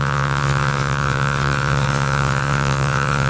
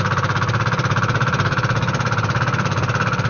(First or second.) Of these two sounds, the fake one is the first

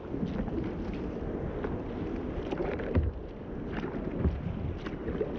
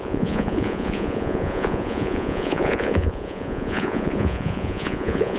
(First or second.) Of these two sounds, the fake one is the second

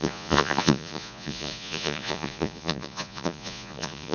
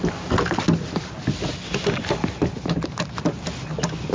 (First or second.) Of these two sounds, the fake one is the first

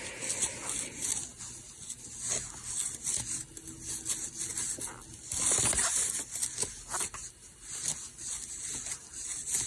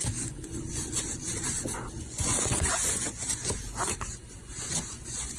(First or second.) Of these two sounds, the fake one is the second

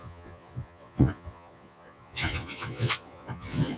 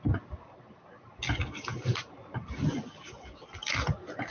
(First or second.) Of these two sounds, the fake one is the first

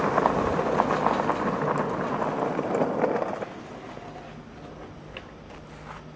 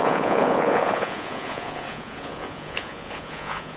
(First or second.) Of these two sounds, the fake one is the second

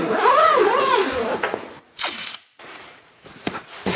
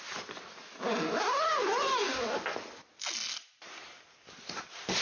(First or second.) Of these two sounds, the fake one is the first